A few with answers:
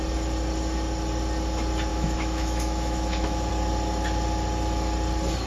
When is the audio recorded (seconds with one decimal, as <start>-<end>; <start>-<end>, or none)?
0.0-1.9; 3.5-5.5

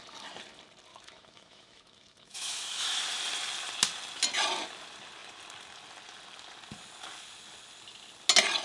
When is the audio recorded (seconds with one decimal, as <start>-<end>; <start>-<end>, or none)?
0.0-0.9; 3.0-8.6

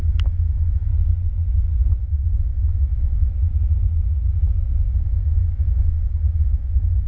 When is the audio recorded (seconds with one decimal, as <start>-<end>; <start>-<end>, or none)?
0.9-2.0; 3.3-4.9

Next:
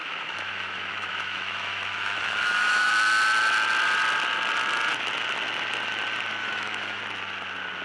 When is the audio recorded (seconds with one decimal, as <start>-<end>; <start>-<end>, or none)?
2.9-6.4; 7.0-7.8

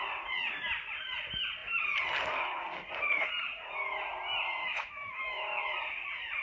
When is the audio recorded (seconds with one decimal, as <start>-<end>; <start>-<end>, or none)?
0.0-4.6; 5.6-6.4

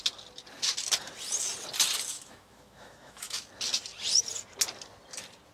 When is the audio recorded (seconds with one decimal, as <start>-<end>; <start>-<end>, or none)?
0.0-2.1; 3.5-5.5